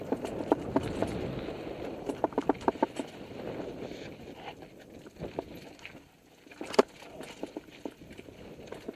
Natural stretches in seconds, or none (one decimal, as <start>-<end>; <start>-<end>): 0.0-1.0; 2.0-9.0